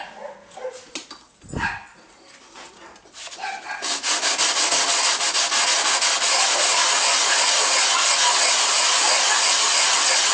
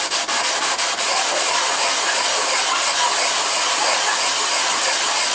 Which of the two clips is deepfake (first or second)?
second